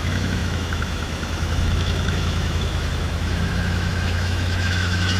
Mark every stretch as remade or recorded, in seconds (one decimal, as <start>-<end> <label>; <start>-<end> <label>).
0.0-5.2 remade